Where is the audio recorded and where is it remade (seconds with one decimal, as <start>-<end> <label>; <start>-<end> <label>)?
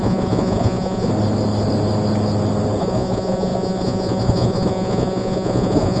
0.0-1.1 remade; 1.1-2.8 recorded; 2.8-6.0 remade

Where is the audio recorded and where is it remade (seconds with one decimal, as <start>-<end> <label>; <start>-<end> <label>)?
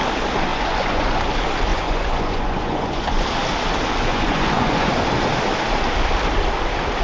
0.0-0.5 recorded; 0.5-1.1 remade; 1.1-1.7 recorded; 1.7-3.2 remade; 3.2-4.1 recorded; 4.1-4.9 remade; 4.9-7.0 recorded